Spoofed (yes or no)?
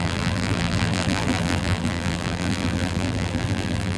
yes